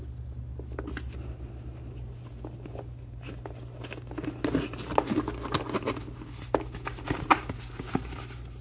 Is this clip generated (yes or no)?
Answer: no